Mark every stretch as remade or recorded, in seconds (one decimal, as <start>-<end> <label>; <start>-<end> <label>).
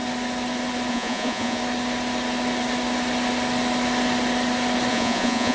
0.0-0.9 recorded; 0.9-1.6 remade; 1.6-4.9 recorded; 4.9-5.5 remade